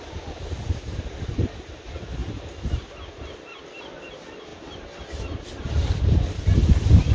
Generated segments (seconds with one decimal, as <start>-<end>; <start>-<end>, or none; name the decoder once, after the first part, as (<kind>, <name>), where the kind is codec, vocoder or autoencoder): none